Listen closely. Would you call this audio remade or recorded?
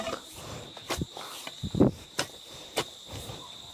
remade